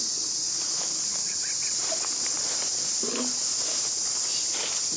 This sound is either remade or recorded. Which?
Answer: recorded